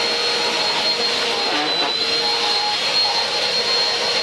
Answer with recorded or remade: recorded